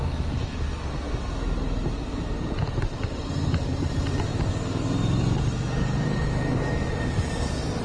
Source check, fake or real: real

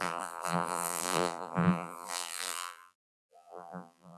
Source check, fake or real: fake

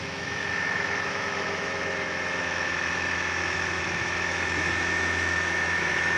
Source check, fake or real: fake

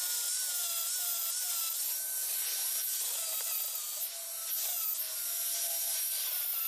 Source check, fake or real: real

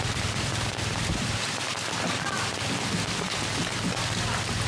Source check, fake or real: fake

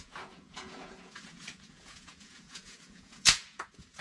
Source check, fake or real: fake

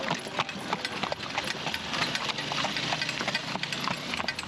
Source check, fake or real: real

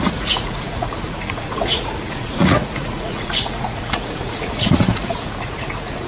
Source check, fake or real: fake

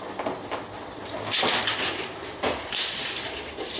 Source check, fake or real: fake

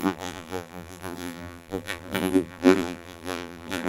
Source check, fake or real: fake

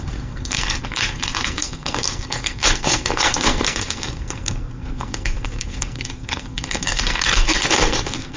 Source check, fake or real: fake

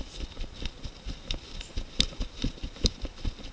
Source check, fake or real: real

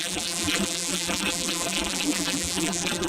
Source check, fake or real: fake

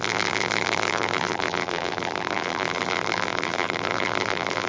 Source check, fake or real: fake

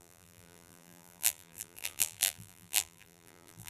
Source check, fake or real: fake